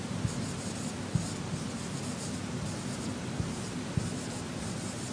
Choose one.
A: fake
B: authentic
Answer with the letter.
B